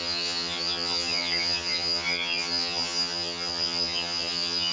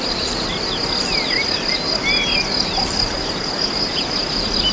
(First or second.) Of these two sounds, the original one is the second